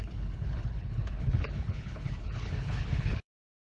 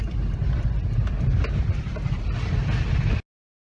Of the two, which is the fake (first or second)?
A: first